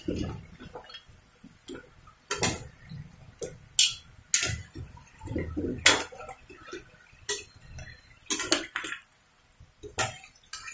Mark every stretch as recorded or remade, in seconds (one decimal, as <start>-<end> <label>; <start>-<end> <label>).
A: 0.0-10.7 recorded